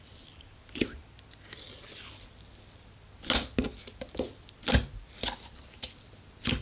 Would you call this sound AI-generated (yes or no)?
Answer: no